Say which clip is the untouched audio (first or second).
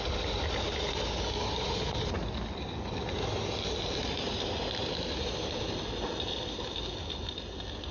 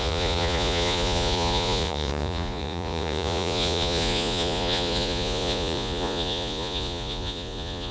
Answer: first